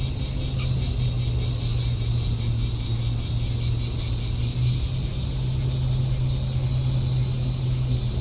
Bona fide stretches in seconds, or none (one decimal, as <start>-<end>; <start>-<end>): 0.0-8.2